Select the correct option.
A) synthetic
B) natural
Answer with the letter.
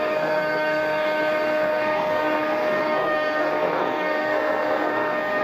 A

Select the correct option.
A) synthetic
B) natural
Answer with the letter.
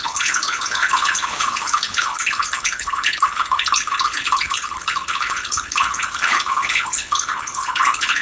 A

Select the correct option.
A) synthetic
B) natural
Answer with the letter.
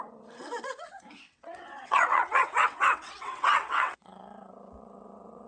A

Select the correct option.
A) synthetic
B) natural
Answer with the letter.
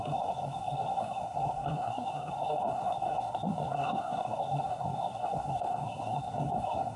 A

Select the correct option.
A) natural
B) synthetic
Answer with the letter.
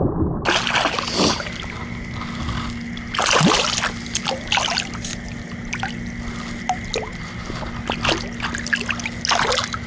A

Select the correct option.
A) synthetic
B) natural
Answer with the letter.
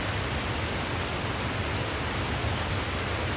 B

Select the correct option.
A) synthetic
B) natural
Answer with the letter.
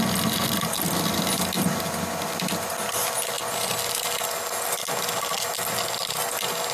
B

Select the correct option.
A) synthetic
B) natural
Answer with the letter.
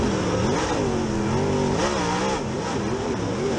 B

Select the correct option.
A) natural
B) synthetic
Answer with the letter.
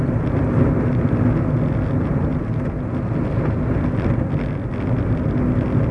A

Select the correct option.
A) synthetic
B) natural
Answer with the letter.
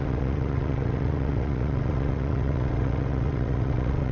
A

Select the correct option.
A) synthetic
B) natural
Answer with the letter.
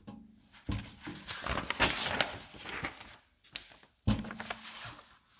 B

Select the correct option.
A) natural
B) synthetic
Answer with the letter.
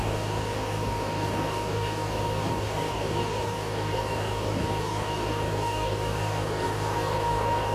B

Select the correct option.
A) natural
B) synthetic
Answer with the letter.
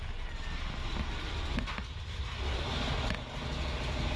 A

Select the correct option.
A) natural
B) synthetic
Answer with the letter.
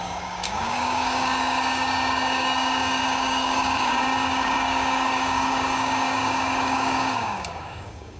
B